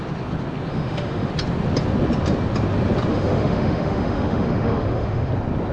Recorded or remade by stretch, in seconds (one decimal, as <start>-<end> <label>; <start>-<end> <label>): 0.0-0.7 recorded; 0.7-1.3 remade; 1.3-3.1 recorded; 3.1-5.3 remade; 5.3-5.7 recorded